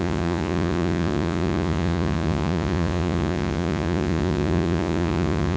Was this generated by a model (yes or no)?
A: yes